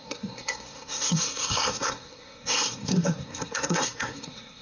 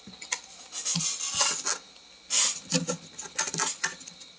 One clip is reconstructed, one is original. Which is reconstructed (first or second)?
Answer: first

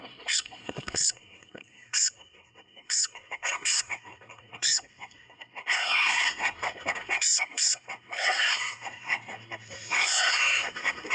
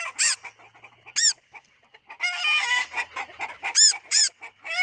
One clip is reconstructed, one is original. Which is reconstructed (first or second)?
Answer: first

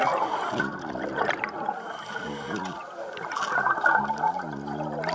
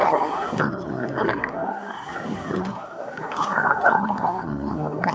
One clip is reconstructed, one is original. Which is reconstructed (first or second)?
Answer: second